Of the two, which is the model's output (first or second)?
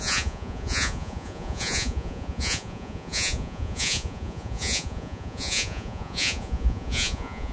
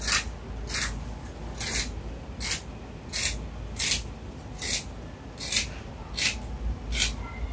first